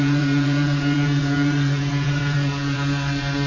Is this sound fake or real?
fake